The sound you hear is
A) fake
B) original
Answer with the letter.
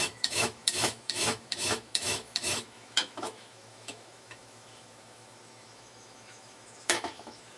A